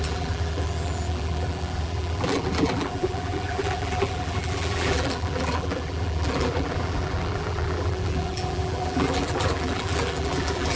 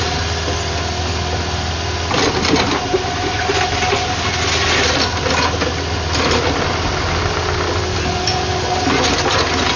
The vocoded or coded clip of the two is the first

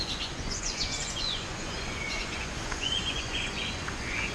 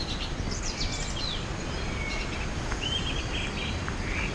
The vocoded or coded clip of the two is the first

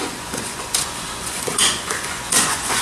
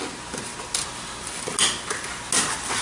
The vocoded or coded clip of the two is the first